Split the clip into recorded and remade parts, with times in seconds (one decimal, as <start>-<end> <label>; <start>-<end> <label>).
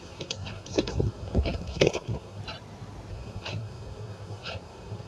0.0-2.4 remade; 2.4-3.1 recorded; 3.1-5.1 remade